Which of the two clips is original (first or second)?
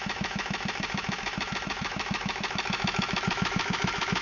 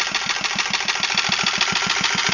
second